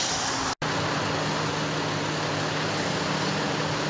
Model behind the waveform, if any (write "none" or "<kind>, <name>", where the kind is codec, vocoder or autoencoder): none